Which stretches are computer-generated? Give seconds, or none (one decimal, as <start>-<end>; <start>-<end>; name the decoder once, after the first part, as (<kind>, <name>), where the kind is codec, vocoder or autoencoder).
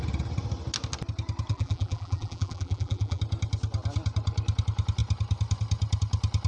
1.5-3.2 (vocoder, BigVGAN v2)